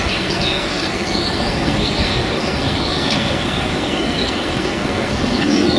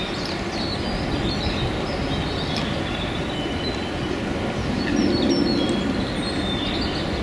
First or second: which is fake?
first